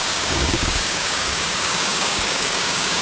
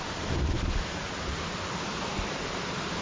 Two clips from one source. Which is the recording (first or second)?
second